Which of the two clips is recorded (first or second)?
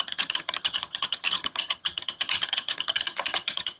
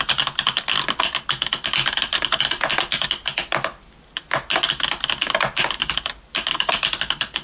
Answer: second